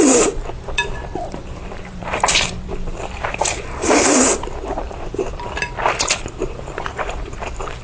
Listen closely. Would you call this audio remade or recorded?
remade